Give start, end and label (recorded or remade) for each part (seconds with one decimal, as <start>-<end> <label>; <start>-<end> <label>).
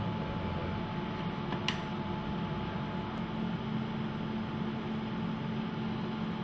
0.0-6.4 recorded